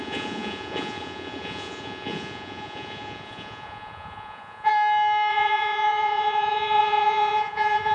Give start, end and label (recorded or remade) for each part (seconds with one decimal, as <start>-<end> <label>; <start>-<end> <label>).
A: 0.0-4.7 remade; 4.7-5.3 recorded; 5.3-7.9 remade